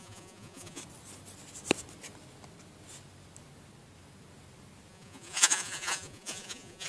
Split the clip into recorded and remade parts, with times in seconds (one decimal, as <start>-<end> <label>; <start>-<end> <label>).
0.0-0.8 remade; 0.8-4.9 recorded; 4.9-6.9 remade